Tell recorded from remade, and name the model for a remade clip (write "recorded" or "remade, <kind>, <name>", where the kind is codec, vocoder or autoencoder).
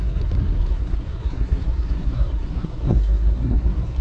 remade, codec, SNAC